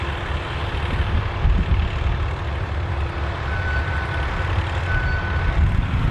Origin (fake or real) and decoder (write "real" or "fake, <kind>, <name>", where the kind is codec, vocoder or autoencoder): real